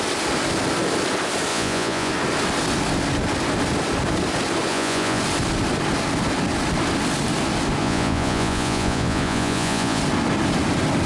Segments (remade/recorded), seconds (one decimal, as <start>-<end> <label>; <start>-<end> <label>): 0.0-1.5 recorded; 1.5-2.1 remade; 2.1-4.7 recorded; 4.7-5.2 remade; 5.2-7.8 recorded; 7.8-10.0 remade; 10.0-11.1 recorded